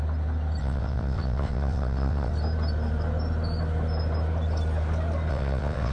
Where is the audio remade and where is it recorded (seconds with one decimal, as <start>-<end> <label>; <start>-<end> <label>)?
0.0-0.6 recorded; 0.6-2.3 remade; 2.3-5.3 recorded; 5.3-5.9 remade